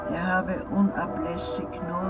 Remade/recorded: recorded